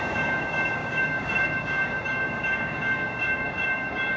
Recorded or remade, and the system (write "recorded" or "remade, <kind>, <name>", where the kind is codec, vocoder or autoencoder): remade, codec, DAC